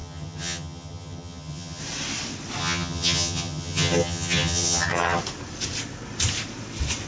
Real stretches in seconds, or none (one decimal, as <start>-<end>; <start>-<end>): 1.8-2.6; 5.2-7.1